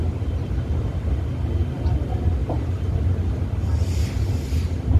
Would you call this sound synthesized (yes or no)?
no